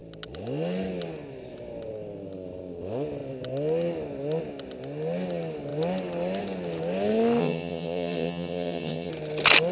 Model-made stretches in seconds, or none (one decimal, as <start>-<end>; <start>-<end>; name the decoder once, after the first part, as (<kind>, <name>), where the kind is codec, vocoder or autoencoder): 7.4-9.1 (vocoder, HiFi-GAN)